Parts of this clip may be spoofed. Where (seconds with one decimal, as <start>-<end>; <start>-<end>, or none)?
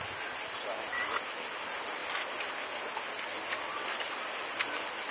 none